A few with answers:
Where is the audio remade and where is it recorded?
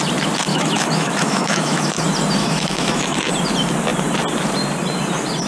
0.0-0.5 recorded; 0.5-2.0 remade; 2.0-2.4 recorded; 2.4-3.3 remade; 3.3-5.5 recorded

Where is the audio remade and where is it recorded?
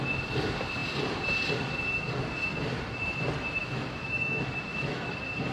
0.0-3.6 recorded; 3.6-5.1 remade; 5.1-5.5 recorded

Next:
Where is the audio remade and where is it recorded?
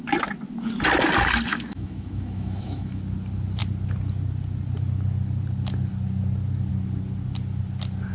0.0-1.5 recorded; 1.5-3.0 remade; 3.0-8.1 recorded